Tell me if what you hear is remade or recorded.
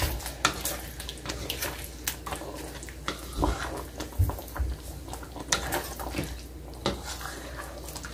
recorded